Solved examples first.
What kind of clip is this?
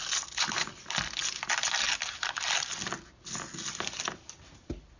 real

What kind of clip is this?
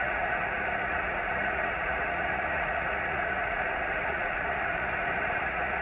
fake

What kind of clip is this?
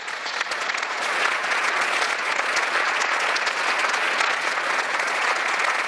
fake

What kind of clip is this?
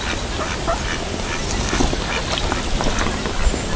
real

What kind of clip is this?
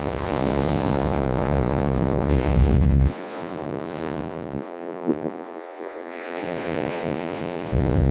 fake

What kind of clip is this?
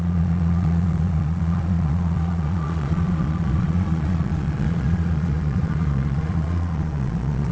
fake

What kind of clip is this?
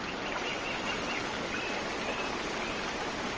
real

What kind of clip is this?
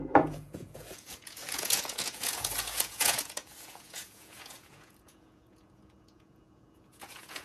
fake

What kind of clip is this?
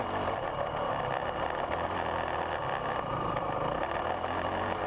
real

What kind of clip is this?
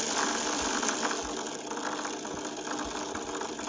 real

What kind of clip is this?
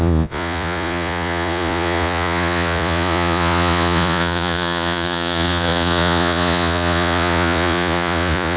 fake